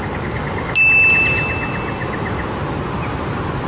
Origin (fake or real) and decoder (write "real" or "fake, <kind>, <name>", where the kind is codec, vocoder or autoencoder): real